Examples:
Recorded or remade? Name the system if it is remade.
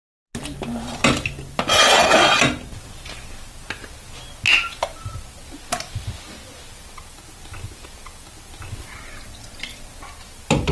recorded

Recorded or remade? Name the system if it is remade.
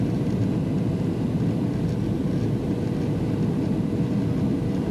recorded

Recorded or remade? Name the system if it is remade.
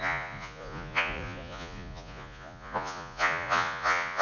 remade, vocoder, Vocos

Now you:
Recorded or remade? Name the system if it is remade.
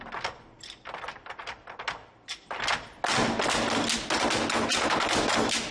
recorded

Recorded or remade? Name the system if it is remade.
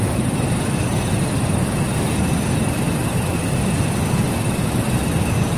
recorded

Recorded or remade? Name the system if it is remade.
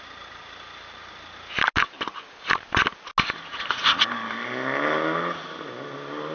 recorded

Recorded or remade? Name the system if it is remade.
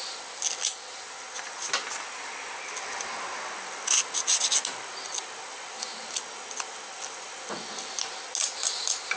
recorded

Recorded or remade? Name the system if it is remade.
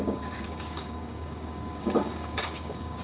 remade, codec, DAC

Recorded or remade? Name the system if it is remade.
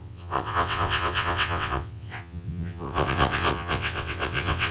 remade, vocoder, WaveNeXt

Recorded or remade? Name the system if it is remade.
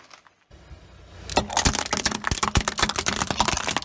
recorded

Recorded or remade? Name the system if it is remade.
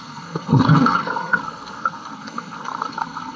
remade, codec, SNAC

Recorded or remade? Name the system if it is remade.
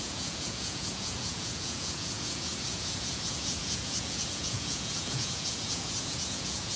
remade, vocoder, Vocos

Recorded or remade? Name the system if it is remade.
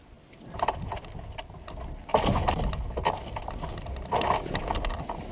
recorded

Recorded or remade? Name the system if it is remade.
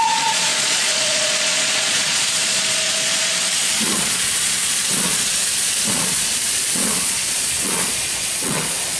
remade, vocoder, Vocos